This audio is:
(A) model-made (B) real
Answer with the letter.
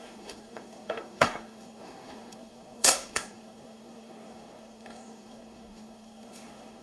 A